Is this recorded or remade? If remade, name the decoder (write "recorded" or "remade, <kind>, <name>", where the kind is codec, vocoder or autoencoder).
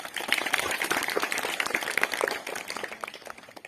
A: remade, vocoder, BigVGAN v2